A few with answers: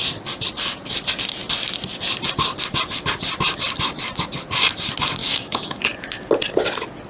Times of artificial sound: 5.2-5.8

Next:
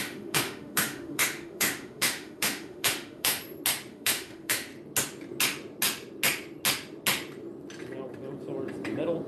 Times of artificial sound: 0.0-3.4; 3.9-4.7

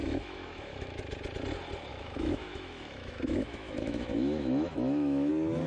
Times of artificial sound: 0.0-1.0; 1.9-5.3

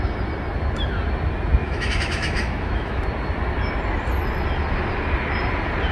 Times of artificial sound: 1.6-3.0

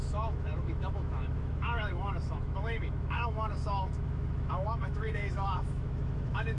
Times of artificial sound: 0.0-6.6

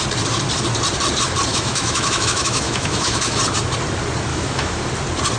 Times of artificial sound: 1.5-3.4; 4.3-4.8